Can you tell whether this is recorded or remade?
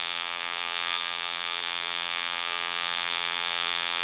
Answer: remade